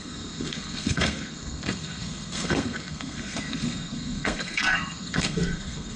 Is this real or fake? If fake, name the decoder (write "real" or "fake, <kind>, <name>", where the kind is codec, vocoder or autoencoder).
fake, codec, SNAC